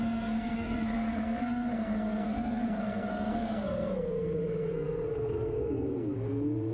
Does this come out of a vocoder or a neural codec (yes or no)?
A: yes